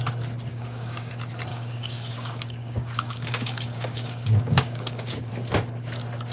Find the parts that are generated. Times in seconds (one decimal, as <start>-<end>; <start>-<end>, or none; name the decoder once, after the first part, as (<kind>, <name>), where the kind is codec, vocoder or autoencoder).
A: 0.5-1.1 (codec, DAC); 1.5-5.3